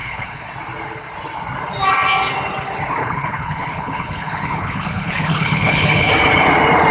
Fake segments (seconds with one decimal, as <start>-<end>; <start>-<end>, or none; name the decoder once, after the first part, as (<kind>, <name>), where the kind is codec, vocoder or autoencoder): 0.0-0.5 (codec, HILCodec); 3.0-6.1